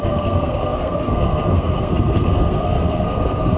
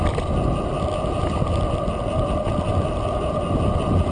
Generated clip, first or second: first